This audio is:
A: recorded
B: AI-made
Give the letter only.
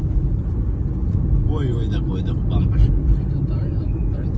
A